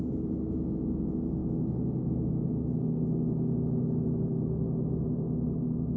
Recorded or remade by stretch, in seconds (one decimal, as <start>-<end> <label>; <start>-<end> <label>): 0.0-1.4 recorded; 1.4-2.7 remade; 2.7-6.0 recorded